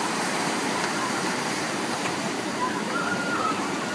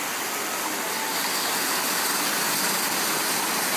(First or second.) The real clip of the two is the second